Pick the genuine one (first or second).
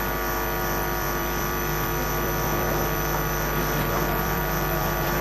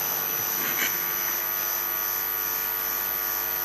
second